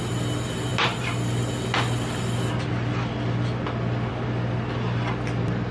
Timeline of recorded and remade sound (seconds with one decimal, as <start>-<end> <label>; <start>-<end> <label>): 0.0-5.7 recorded